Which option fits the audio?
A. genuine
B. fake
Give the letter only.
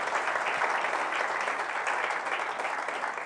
A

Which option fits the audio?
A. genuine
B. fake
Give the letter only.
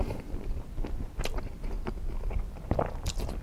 A